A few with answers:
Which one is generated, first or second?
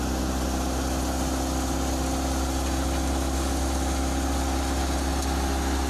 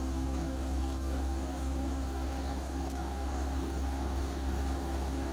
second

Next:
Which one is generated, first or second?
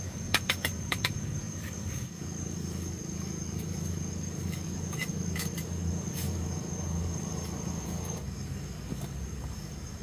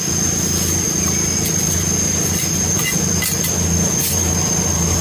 first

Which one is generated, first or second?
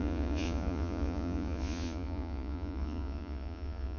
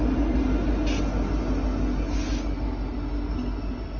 first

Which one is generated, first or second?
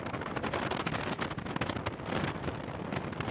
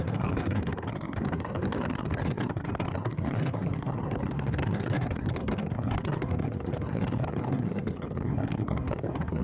second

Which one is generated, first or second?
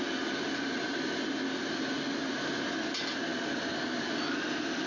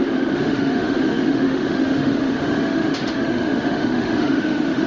second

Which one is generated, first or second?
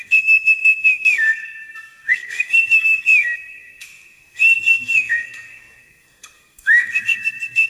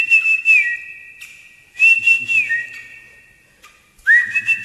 first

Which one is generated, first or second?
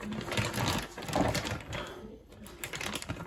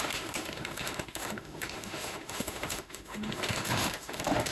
second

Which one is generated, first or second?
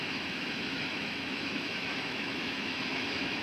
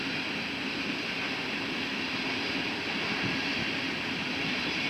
first